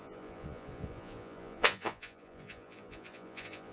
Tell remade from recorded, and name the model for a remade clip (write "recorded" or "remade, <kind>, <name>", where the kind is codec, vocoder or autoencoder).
remade, vocoder, Vocos